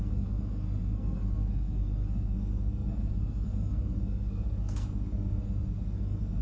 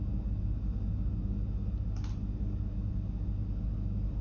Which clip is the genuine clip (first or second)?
second